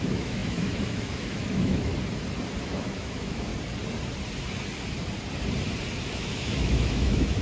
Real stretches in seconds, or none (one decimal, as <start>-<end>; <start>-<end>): 1.9-2.6; 3.5-6.0